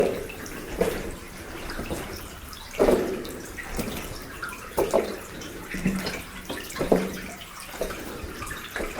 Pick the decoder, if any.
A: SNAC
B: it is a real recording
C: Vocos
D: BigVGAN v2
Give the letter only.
D